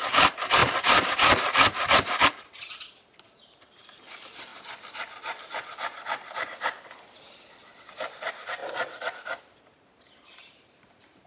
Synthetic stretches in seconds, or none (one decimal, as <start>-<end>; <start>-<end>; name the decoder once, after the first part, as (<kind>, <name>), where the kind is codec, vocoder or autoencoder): 0.0-4.5 (vocoder, BigVGAN v2); 8.2-8.6; 9.4-11.3